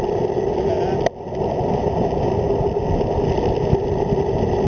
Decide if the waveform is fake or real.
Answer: real